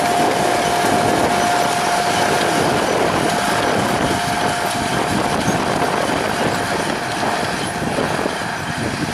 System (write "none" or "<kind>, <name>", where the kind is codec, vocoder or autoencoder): none